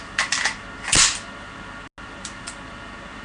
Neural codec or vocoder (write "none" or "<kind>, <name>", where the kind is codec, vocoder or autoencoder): none